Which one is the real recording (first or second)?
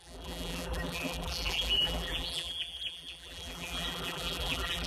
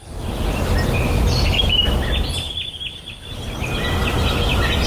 second